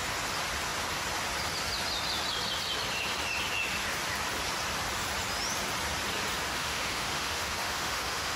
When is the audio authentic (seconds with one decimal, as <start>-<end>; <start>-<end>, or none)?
0.0-6.5